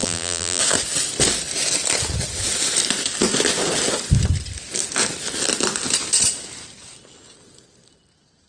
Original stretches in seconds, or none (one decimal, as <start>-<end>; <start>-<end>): 0.6-8.5